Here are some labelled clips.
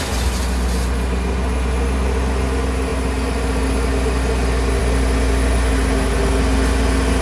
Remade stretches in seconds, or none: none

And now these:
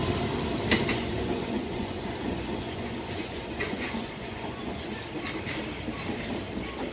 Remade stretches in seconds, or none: 0.9-5.0 (vocoder, Vocos)